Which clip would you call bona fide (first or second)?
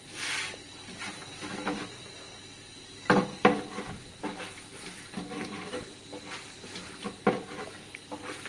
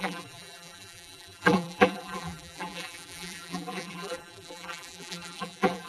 first